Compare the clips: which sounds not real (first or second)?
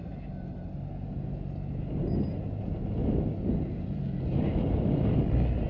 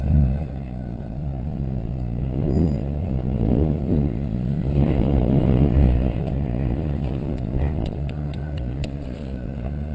second